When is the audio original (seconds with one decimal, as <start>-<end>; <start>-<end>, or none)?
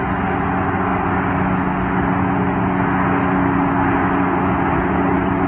0.0-5.5